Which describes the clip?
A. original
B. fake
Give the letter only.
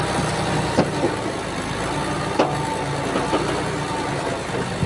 A